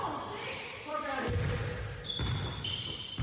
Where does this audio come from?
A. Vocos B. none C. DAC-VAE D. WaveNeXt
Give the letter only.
B